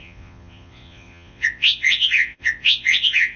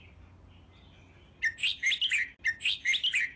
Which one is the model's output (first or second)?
first